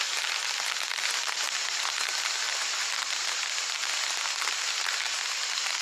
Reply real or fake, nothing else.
real